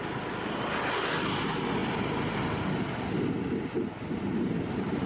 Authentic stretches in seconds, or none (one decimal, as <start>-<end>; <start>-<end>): 0.0-5.1